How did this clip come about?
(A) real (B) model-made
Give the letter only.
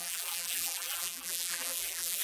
B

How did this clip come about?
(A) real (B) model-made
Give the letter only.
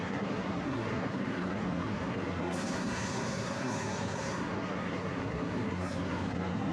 B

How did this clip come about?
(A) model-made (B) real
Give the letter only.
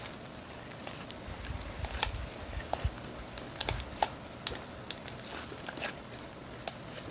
B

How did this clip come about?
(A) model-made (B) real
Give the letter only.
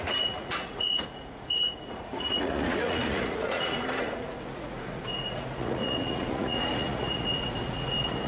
A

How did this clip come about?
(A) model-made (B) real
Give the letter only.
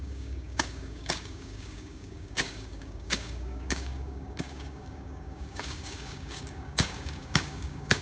A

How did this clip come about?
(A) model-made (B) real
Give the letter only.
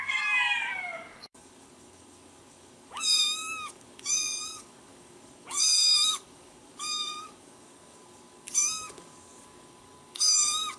A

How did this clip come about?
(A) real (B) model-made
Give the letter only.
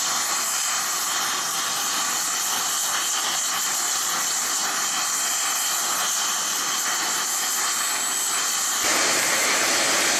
A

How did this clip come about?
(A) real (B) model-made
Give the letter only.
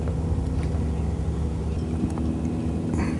A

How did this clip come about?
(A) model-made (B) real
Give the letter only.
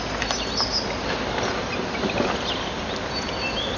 B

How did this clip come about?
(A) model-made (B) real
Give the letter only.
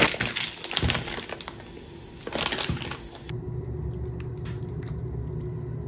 B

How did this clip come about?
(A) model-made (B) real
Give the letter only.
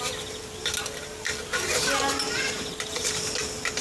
B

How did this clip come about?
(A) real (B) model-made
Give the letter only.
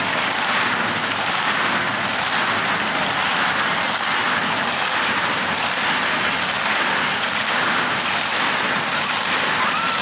A